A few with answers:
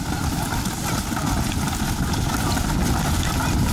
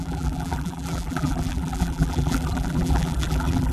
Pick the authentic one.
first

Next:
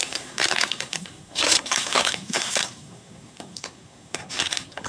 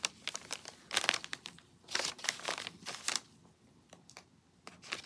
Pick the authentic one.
second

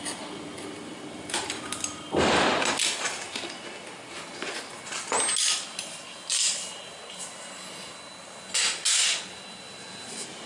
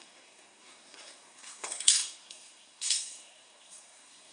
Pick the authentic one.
first